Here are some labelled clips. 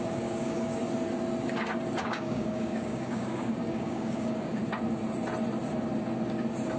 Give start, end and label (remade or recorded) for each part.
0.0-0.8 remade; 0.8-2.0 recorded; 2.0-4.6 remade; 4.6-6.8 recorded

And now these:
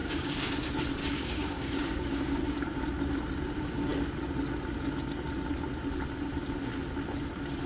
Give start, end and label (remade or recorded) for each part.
0.0-0.5 remade; 0.5-1.0 recorded; 1.0-2.4 remade; 2.4-7.7 recorded

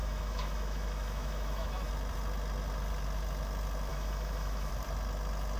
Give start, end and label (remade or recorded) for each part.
0.0-1.9 remade; 1.9-3.9 recorded; 3.9-4.7 remade; 4.7-5.6 recorded